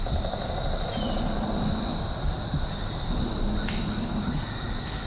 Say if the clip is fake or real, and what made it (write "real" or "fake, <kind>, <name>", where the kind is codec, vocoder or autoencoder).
real